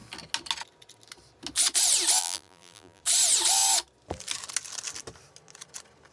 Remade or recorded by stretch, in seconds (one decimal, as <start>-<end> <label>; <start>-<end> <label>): 0.0-2.2 recorded; 2.2-3.0 remade; 3.0-6.1 recorded